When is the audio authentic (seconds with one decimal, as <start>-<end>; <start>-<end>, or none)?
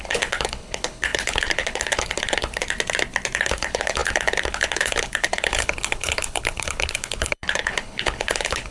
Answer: 2.6-3.4